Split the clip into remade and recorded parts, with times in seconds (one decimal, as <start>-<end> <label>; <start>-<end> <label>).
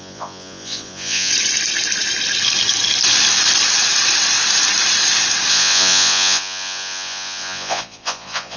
0.0-1.3 remade; 1.3-5.5 recorded; 5.5-8.6 remade